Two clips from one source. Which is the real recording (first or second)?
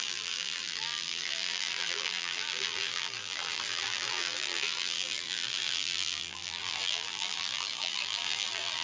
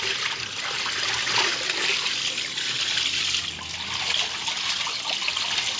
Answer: second